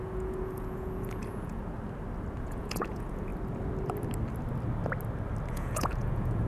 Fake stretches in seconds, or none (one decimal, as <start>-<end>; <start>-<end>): 0.0-1.6; 2.4-3.3; 5.5-6.5